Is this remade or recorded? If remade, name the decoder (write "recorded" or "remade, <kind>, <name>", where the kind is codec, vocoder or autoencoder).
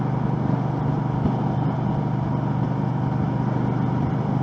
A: recorded